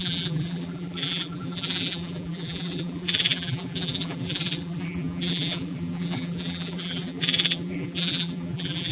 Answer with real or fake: fake